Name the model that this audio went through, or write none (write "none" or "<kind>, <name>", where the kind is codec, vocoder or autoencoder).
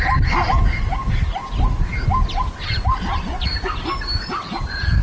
none